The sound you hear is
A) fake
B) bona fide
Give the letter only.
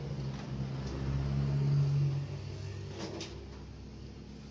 B